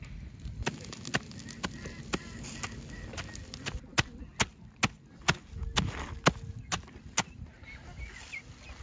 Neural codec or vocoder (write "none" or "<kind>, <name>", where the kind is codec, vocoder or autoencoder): none